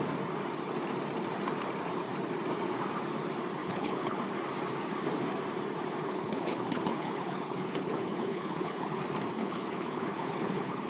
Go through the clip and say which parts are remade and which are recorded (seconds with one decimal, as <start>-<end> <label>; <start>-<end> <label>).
0.0-3.6 recorded; 3.6-4.2 remade; 4.2-6.0 recorded; 6.0-9.0 remade; 9.0-9.4 recorded; 9.4-10.9 remade